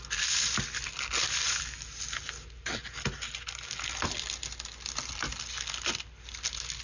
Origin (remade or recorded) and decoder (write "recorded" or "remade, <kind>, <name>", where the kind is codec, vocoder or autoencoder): recorded